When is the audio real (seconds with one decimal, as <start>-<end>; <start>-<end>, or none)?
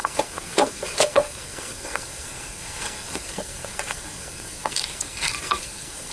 none